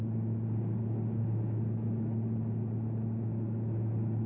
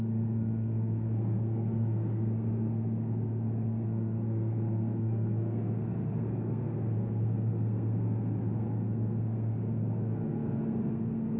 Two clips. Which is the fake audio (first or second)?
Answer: second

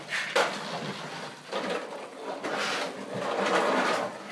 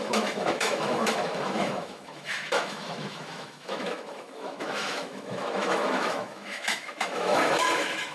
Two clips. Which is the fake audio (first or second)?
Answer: second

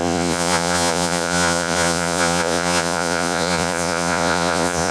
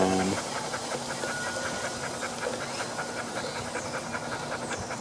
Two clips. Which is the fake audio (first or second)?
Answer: first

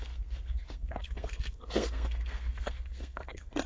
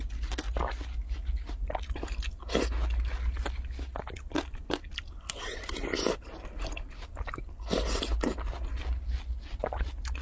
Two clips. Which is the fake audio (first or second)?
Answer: first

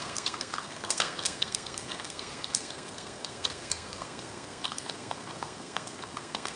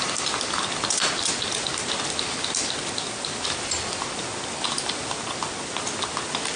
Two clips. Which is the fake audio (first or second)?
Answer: first